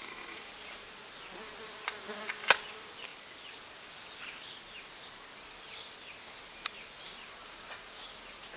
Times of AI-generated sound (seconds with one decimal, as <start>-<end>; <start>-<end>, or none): 0.0-0.5